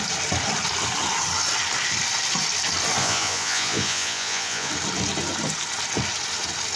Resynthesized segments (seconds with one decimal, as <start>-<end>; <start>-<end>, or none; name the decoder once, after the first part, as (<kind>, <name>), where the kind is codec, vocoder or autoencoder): 3.0-4.7 (vocoder, Vocos)